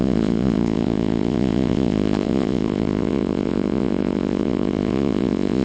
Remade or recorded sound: remade